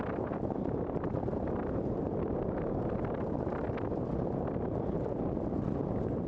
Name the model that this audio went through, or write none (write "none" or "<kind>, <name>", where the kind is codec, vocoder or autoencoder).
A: none